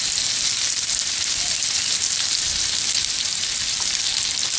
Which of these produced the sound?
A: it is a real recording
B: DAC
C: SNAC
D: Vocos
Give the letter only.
A